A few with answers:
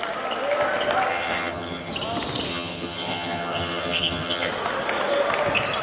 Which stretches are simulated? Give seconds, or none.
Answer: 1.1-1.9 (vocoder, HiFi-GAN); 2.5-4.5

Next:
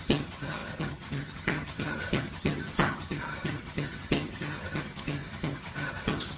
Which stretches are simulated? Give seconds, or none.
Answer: 0.0-6.4 (vocoder, HiFi-GAN)

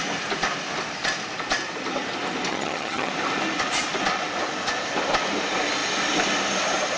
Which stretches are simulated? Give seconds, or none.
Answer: 2.5-3.1 (vocoder, HiFi-GAN)

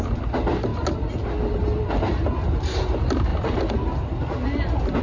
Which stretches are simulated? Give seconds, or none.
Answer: none

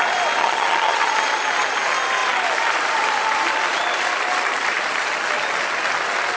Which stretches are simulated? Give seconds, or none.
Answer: 0.4-1.1 (vocoder, HiFi-GAN)

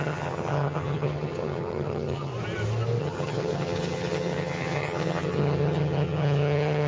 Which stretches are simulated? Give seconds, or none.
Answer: 0.0-2.3 (vocoder, HiFi-GAN); 3.0-6.9

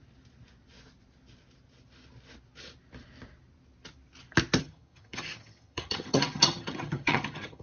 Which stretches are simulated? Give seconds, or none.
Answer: 4.6-7.6 (vocoder, HiFi-GAN)

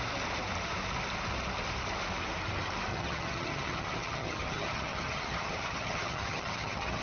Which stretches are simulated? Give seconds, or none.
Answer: 2.9-7.0 (vocoder, HiFi-GAN)